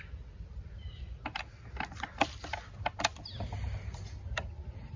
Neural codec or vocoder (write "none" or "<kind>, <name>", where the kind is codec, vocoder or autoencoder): none